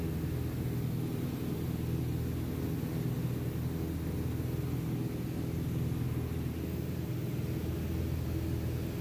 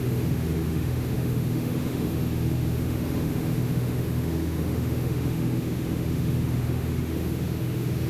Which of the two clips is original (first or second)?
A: first